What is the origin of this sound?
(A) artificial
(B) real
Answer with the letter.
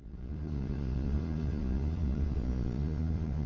A